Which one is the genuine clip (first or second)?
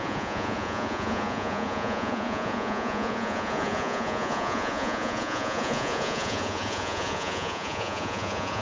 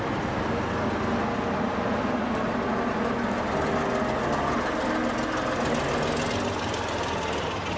second